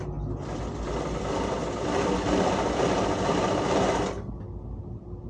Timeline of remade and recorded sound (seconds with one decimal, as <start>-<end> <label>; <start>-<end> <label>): 0.0-5.3 recorded

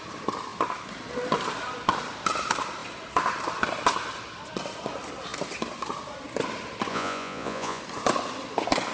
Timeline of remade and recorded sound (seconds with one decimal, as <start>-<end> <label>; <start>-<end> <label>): 0.0-6.9 recorded; 6.9-7.8 remade; 7.8-8.9 recorded

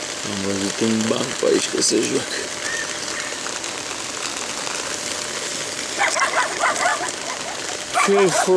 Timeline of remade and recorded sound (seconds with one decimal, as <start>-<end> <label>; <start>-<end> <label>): 0.0-6.9 recorded; 6.9-7.4 remade; 7.4-8.6 recorded

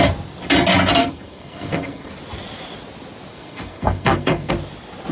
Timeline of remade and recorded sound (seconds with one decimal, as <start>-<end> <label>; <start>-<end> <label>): 0.0-1.0 recorded; 1.0-2.1 remade; 2.1-3.3 recorded; 3.3-4.5 remade; 4.5-5.1 recorded